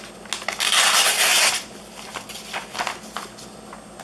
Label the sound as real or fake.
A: real